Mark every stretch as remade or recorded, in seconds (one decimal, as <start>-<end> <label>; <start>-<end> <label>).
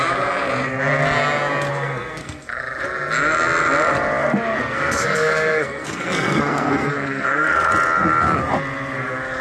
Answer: 0.0-1.7 recorded; 1.7-2.6 remade; 2.6-4.6 recorded; 4.6-7.7 remade; 7.7-9.4 recorded